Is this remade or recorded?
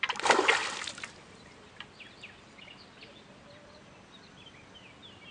recorded